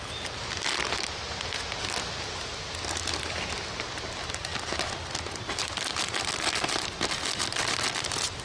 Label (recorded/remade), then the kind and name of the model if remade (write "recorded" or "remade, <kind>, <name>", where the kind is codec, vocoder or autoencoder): recorded